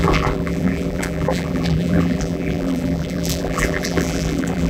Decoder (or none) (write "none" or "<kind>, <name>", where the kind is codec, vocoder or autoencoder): vocoder, BigVGAN v2